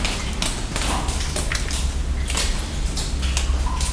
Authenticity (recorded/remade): recorded